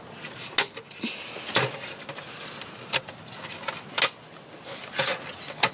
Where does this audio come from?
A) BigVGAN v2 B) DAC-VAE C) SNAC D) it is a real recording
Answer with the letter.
D